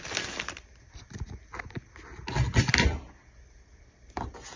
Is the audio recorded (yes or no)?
yes